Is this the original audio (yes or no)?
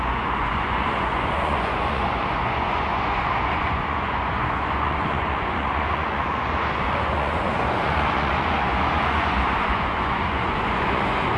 no